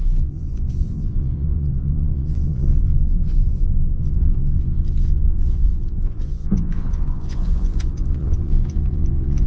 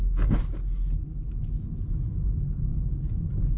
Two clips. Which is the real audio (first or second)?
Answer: second